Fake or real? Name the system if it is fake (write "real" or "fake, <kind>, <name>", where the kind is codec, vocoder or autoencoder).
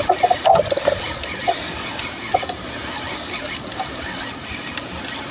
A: real